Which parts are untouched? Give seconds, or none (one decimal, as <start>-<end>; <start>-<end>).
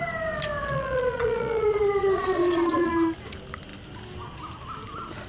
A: 0.0-0.6; 2.9-5.3